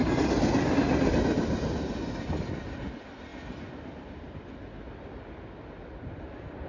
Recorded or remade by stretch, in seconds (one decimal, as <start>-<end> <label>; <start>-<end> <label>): 0.0-6.7 recorded